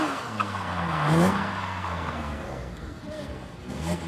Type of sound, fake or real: fake